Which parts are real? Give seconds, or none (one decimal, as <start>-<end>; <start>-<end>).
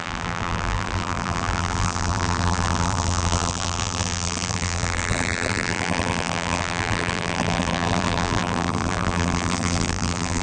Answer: none